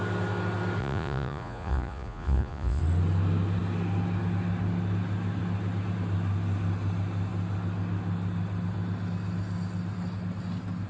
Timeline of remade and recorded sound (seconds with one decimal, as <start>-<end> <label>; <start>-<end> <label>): 0.0-0.8 recorded; 0.8-2.8 remade; 2.8-10.9 recorded